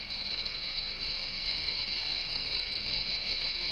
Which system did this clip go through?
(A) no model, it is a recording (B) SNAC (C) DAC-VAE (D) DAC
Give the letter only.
B